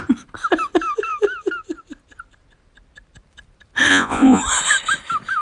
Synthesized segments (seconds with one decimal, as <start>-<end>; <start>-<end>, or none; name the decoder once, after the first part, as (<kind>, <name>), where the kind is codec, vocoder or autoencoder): 3.9-4.4 (vocoder, Vocos)